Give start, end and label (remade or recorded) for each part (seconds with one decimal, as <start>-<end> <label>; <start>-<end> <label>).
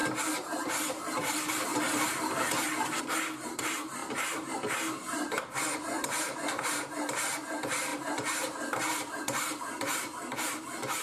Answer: 0.0-0.7 recorded; 0.7-11.0 remade